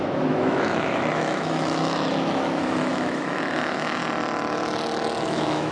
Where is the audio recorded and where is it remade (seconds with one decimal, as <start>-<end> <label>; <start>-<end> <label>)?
0.0-4.0 remade; 4.0-5.2 recorded; 5.2-5.7 remade